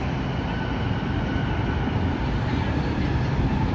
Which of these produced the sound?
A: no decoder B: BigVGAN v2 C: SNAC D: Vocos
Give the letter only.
A